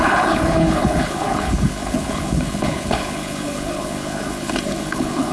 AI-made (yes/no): yes